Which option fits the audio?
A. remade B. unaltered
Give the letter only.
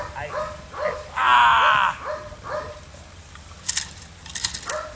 B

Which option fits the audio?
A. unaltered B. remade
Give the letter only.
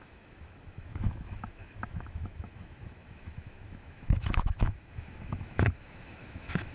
B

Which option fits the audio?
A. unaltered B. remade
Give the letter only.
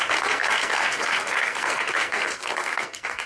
B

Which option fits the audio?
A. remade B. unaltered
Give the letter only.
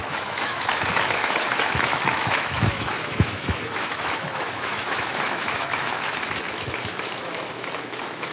A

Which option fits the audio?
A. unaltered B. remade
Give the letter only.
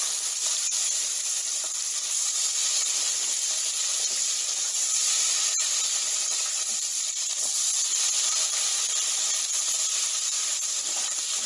B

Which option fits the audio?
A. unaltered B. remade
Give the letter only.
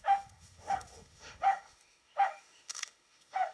B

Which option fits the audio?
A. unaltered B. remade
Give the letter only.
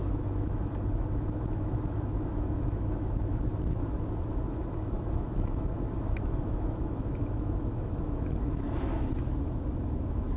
B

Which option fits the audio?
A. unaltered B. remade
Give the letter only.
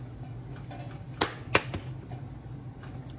A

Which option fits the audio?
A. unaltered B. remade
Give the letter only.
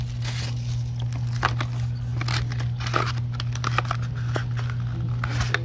A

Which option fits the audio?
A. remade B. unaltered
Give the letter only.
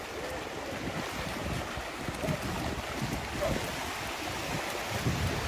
B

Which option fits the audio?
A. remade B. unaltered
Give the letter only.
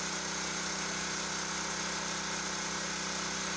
B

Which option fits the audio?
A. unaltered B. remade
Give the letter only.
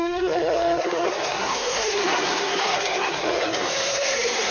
B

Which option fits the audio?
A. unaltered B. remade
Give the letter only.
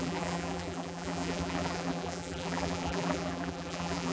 B